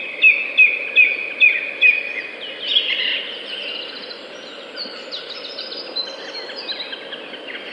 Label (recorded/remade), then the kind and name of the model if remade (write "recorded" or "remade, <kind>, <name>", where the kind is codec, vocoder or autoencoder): recorded